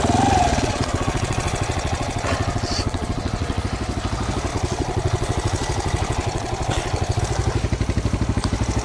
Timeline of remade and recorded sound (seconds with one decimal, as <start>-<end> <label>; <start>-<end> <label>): 0.0-0.5 recorded; 0.5-3.6 remade; 3.6-4.5 recorded; 4.5-7.2 remade; 7.2-8.8 recorded